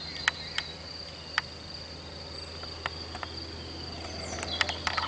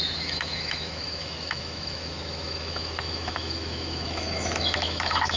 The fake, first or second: second